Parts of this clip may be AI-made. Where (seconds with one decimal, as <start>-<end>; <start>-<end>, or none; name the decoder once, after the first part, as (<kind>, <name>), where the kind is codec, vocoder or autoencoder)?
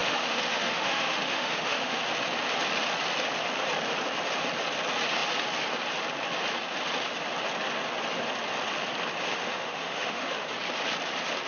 0.0-2.0 (autoencoder, DAC-VAE); 9.3-10.5